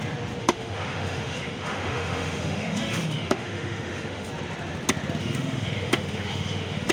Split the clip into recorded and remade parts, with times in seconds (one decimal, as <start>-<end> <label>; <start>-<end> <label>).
0.0-0.4 recorded; 0.4-4.3 remade; 4.3-5.2 recorded; 5.2-6.9 remade